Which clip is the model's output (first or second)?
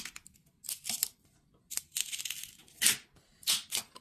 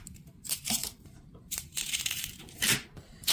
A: second